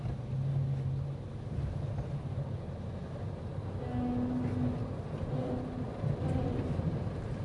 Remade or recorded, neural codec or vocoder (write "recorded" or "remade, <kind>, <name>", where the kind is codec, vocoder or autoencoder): recorded